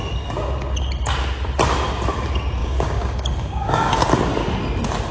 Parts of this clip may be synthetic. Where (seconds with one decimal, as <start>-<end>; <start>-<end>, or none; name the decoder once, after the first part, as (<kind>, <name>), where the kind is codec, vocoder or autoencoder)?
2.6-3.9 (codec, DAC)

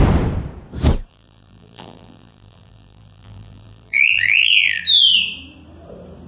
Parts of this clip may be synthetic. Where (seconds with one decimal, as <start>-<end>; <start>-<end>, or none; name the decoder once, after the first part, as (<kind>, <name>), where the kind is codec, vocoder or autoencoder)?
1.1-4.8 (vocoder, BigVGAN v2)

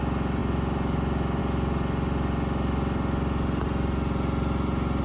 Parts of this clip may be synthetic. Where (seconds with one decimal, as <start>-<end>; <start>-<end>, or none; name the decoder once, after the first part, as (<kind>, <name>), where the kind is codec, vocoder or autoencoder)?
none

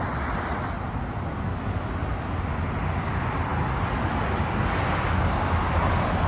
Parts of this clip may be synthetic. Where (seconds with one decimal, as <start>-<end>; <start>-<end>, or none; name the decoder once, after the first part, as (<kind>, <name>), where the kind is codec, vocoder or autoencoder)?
none

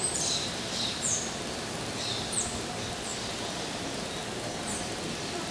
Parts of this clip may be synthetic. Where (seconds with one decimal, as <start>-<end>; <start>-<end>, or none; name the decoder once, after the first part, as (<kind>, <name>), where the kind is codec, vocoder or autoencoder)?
none

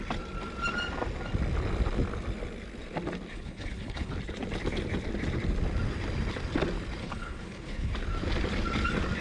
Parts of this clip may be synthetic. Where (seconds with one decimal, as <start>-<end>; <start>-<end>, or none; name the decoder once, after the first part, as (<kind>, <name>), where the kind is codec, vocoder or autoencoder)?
3.3-4.1 (codec, HILCodec); 7.0-7.9

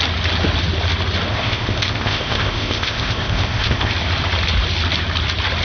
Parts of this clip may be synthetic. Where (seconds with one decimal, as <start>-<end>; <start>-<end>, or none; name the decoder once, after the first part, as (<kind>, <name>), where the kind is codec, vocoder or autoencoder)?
1.3-3.9 (codec, ZipCodec)